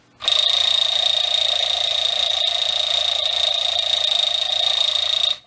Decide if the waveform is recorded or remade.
recorded